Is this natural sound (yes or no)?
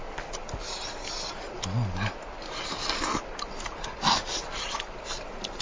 yes